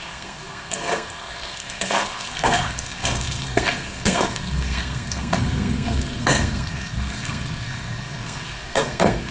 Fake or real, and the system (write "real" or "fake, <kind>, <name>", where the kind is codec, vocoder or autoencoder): fake, codec, SNAC